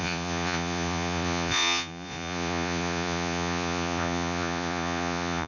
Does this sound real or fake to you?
fake